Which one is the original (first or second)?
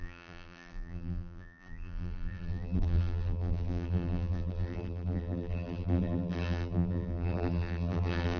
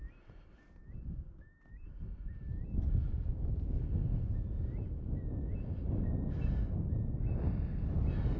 second